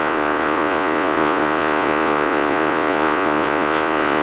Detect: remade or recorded remade